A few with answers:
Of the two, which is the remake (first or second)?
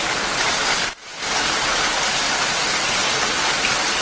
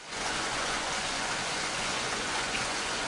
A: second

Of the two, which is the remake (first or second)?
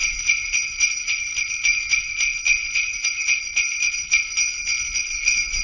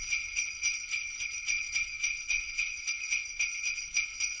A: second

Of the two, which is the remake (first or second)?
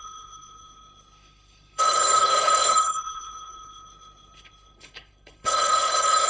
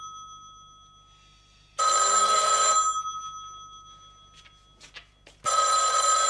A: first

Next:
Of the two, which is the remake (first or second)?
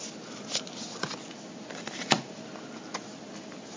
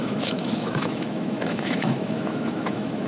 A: second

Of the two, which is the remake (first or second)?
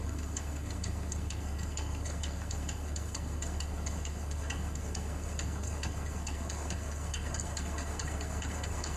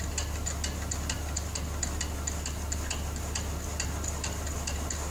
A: first